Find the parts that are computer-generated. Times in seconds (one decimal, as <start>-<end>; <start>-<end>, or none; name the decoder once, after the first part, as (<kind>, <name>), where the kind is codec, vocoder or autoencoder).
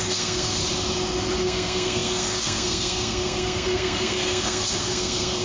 0.0-0.6 (codec, SNAC); 1.4-5.4